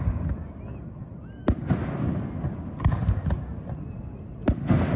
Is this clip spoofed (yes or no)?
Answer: no